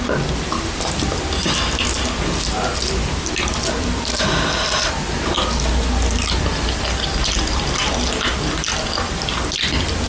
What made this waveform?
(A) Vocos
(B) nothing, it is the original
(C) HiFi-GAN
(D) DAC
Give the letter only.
B